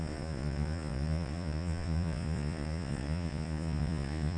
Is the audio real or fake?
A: fake